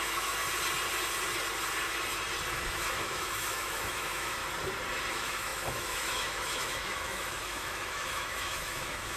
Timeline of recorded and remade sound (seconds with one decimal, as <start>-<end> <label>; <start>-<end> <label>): 0.0-0.4 remade; 0.4-2.5 recorded; 2.5-4.4 remade; 4.4-5.1 recorded; 5.1-9.2 remade